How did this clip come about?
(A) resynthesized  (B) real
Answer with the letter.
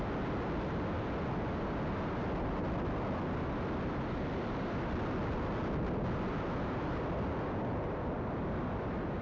B